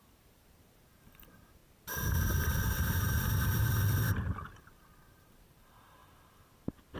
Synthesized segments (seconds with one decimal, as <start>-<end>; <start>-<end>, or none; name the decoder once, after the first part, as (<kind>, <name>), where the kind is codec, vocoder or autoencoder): 0.0-1.6 (vocoder, BigVGAN v2); 4.6-6.0